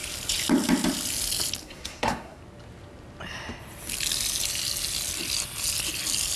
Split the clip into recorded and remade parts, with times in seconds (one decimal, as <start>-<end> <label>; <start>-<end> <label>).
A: 0.0-1.6 recorded; 1.6-2.4 remade; 2.4-6.4 recorded